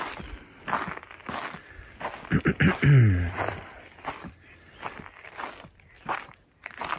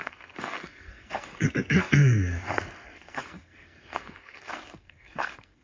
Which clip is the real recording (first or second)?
first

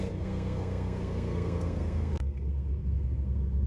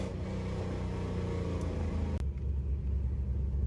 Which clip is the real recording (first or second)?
second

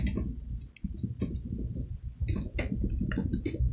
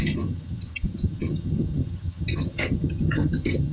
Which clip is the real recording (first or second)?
first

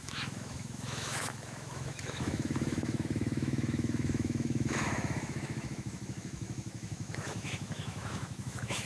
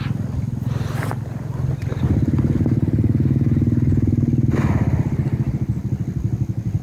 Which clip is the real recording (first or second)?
second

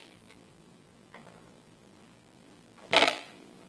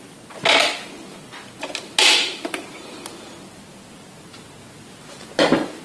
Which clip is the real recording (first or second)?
second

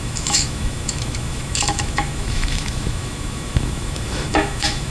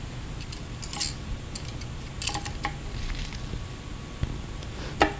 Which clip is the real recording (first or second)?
second